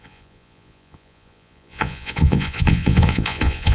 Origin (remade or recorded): remade